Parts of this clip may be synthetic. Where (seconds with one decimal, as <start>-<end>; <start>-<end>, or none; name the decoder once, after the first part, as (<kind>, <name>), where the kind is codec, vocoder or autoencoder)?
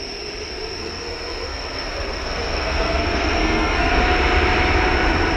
0.8-4.0 (codec, SNAC)